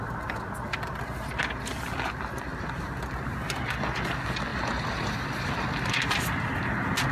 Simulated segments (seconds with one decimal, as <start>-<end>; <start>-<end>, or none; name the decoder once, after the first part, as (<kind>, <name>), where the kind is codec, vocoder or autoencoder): 2.5-3.0 (vocoder, BigVGAN v2); 4.5-5.5